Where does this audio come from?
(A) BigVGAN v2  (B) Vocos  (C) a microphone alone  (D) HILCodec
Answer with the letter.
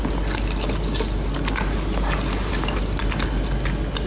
C